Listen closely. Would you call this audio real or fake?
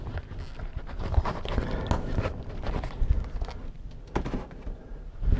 real